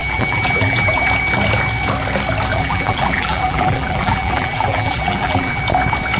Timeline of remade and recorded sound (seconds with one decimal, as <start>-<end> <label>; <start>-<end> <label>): 0.0-1.0 remade; 1.0-2.5 recorded; 2.5-5.6 remade; 5.6-6.2 recorded